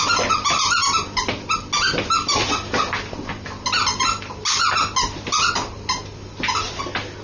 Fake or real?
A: real